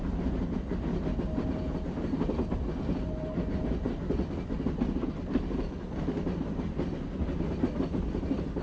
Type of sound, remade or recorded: recorded